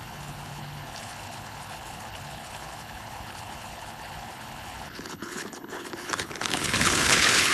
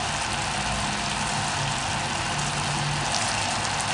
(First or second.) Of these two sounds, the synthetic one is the first